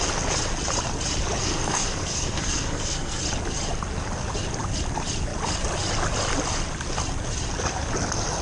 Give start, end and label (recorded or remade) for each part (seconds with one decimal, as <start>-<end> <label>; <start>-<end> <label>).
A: 0.0-1.4 recorded; 1.4-3.2 remade; 3.2-8.4 recorded